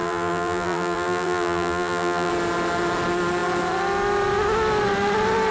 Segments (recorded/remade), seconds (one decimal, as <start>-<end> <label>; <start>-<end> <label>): 0.0-2.3 remade; 2.3-5.5 recorded